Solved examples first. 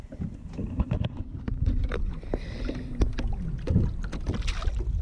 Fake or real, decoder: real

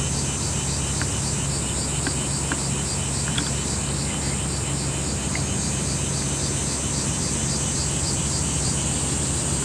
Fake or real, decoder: real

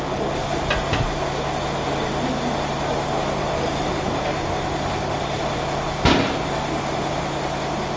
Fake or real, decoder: real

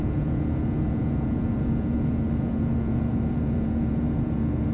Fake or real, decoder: fake, vocoder, Vocos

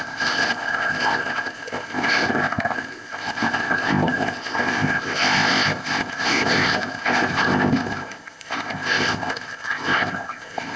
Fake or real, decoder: fake, codec, ZipCodec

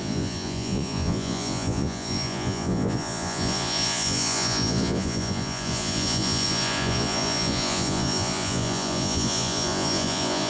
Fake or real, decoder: fake, vocoder, Vocos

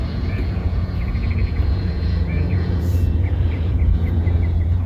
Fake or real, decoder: fake, vocoder, Vocos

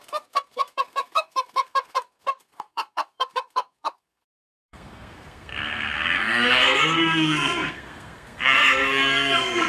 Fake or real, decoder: fake, codec, SNAC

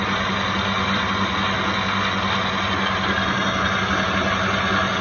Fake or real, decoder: real